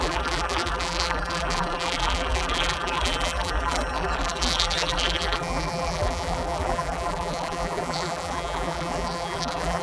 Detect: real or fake fake